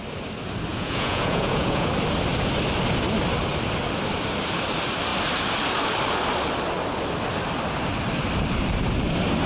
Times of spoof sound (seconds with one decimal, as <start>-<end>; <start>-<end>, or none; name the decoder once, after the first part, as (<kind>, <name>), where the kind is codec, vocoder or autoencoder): 0.7-1.9 (vocoder, Vocos)